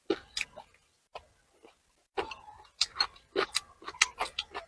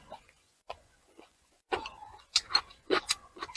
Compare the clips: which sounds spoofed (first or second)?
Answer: second